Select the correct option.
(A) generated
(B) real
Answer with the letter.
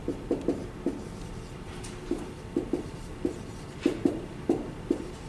B